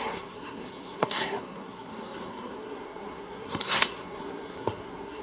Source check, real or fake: fake